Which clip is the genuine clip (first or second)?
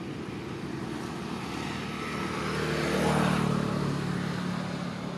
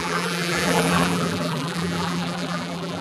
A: first